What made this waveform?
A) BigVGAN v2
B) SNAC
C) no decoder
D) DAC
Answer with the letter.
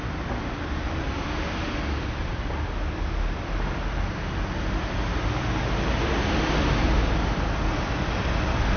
C